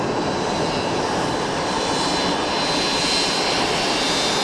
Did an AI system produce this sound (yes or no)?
no